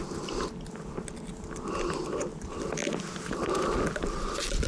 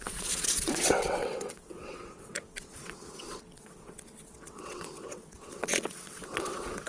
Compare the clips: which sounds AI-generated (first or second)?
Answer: second